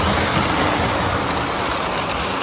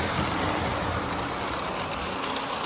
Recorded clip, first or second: second